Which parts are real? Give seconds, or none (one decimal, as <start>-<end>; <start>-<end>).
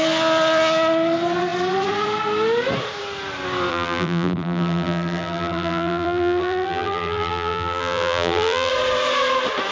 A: 0.0-3.7; 8.7-9.7